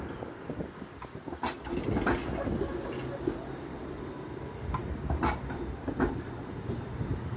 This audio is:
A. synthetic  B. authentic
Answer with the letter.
B